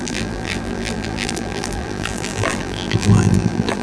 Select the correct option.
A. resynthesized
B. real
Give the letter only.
A